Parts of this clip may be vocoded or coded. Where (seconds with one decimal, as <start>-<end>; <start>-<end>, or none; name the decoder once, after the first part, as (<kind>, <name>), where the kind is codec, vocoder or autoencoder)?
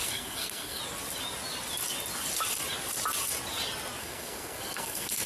0.0-0.8 (codec, SNAC); 4.0-5.3